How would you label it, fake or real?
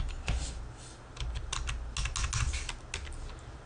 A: real